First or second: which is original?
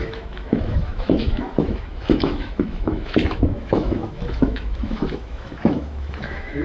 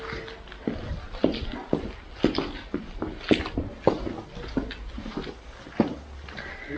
second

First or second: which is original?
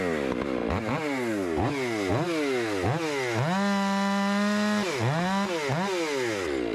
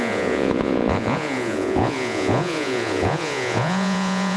first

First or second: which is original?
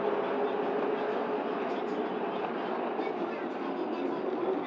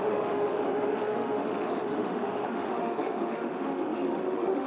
first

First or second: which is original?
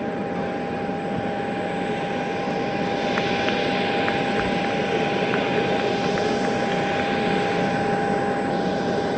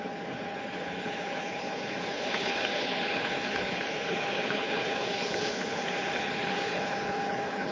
first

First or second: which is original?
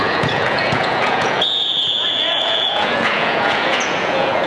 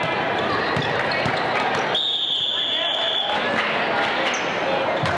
second